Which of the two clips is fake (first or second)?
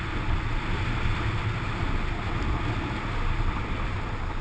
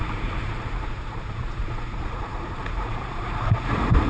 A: second